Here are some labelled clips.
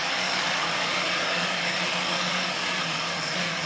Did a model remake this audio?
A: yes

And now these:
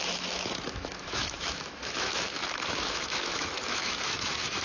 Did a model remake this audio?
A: yes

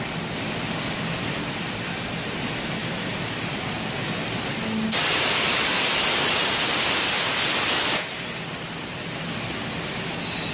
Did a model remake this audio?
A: no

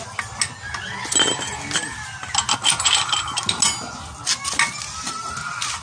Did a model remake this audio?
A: no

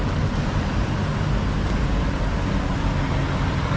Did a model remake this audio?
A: no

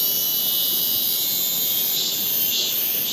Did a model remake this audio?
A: yes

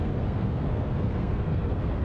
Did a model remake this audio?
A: yes